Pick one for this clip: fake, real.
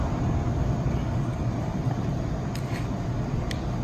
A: real